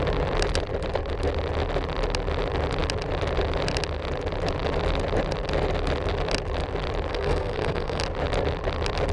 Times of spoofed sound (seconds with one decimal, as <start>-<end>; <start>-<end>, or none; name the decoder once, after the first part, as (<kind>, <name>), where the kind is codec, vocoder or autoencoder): 7.1-8.0 (codec, SNAC)